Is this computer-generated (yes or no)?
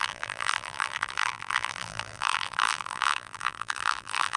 yes